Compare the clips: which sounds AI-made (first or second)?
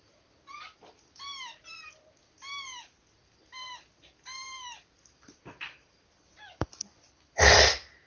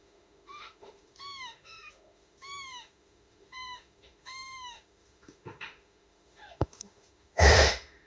second